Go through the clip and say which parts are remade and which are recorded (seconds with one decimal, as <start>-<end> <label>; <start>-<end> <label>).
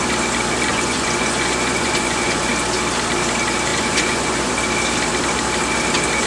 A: 0.0-0.7 recorded; 0.7-2.5 remade; 2.5-3.7 recorded; 3.7-4.5 remade; 4.5-6.3 recorded